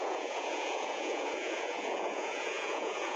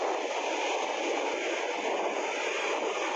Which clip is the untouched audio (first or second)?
second